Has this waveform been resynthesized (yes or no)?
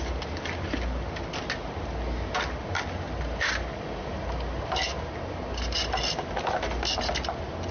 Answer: no